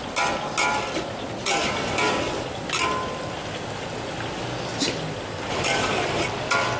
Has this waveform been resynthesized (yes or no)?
no